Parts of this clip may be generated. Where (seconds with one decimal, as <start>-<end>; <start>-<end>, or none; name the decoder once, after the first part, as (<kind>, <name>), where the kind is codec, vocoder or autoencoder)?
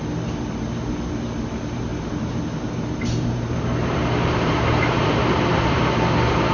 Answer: 1.9-5.8 (vocoder, BigVGAN v2)